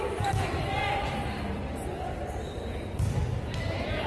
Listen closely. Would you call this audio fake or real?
fake